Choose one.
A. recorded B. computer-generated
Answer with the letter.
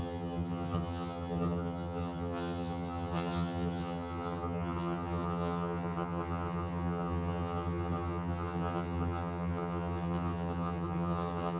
B